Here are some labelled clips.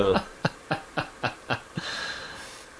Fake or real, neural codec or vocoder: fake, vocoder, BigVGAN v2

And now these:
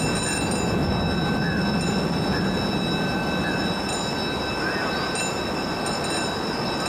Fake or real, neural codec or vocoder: real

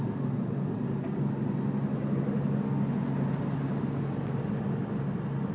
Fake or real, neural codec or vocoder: real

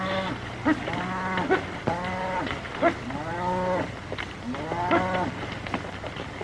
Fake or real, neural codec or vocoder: real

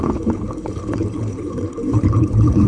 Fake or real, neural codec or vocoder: fake, codec, HILCodec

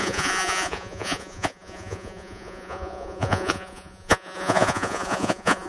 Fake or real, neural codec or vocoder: fake, vocoder, Vocos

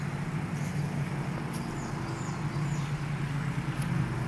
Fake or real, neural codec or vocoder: real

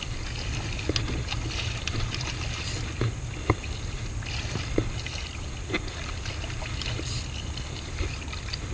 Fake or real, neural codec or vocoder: real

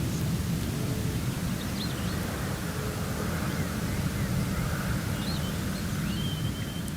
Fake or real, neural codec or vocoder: real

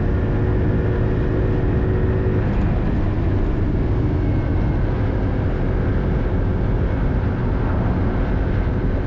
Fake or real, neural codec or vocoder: real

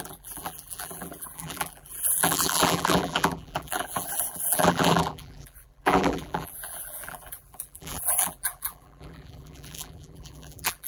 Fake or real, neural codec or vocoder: fake, vocoder, BigVGAN v2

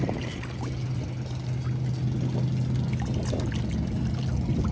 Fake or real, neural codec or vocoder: real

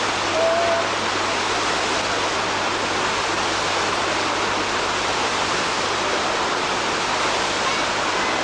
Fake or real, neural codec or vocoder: real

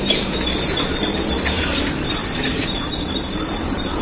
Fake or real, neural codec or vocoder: fake, vocoder, BigVGAN v2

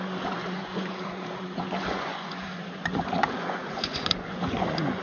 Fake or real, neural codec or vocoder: fake, vocoder, Vocos